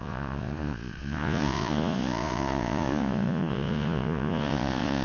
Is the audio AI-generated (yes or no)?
yes